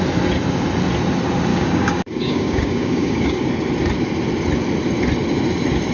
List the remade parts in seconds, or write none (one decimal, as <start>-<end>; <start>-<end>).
1.5-3.5